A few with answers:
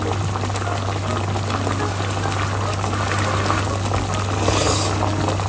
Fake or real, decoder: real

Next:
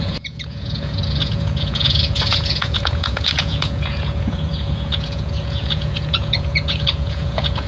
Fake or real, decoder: fake, vocoder, Vocos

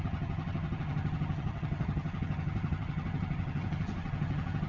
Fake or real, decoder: fake, vocoder, HiFi-GAN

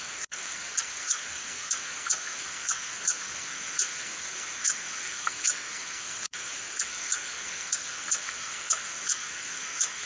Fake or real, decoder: fake, codec, SNAC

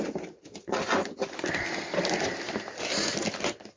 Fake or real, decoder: real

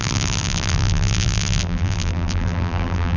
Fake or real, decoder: fake, vocoder, BigVGAN v2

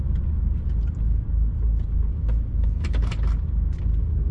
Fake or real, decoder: real